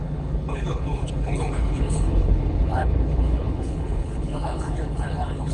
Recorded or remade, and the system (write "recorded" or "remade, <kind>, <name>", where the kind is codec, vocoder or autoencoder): remade, codec, HILCodec